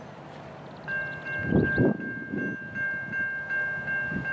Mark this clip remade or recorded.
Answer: recorded